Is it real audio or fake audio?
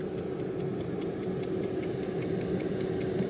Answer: real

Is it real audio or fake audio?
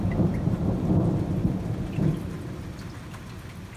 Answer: real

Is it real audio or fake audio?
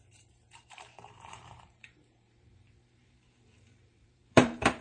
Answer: fake